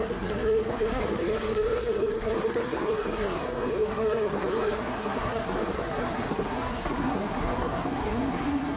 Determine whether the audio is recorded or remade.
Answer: remade